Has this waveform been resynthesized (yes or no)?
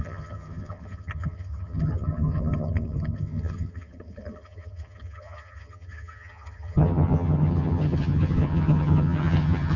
yes